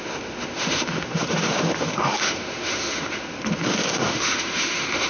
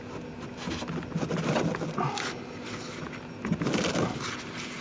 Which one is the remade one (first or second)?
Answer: first